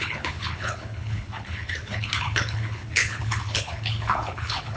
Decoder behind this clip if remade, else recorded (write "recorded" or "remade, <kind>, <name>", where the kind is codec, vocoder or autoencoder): remade, codec, HILCodec